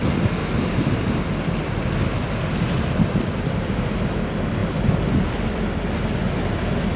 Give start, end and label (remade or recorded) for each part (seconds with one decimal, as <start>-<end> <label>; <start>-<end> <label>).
0.0-4.6 recorded; 4.6-5.2 remade; 5.2-7.0 recorded